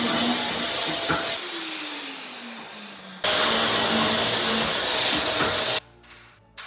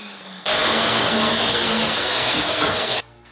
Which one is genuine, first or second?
first